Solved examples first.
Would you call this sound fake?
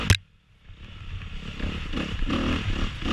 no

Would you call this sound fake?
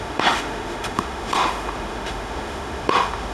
yes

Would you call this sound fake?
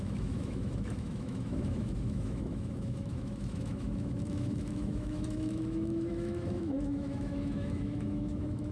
yes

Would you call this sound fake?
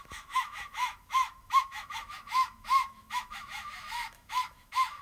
yes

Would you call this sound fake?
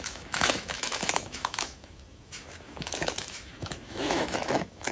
yes